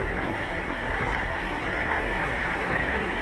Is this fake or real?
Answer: fake